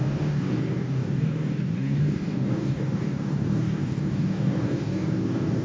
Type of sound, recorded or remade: remade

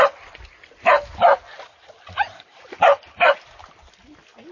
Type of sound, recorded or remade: recorded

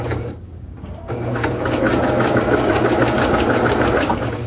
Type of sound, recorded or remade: remade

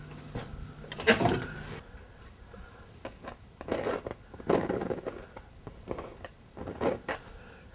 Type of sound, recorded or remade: recorded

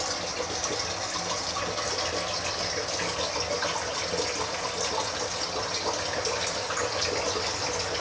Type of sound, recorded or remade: recorded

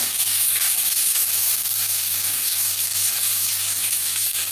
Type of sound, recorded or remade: remade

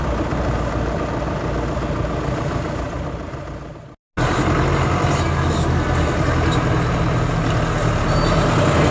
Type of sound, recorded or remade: recorded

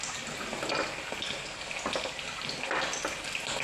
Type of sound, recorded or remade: recorded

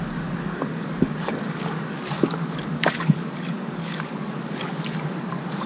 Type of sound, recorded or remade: remade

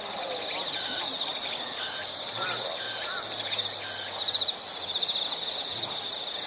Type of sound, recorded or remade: recorded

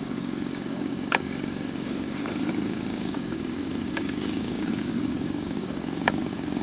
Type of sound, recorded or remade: remade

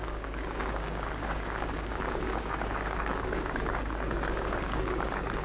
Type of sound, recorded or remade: remade